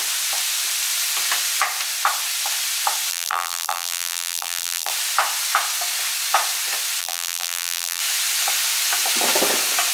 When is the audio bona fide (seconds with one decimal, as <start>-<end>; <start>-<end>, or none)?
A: 0.0-3.1; 4.9-7.0; 8.0-9.9